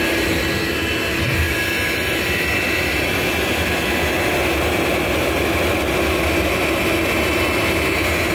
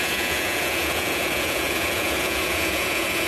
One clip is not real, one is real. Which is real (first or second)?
first